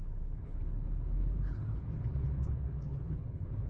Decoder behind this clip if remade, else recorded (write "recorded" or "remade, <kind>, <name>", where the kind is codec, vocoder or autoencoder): remade, codec, HILCodec